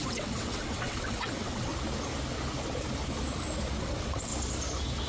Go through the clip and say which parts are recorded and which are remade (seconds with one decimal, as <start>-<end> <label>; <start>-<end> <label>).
0.0-1.7 remade; 1.7-3.8 recorded; 3.8-4.3 remade; 4.3-5.1 recorded